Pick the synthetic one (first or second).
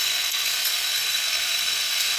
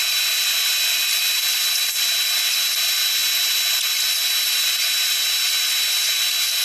first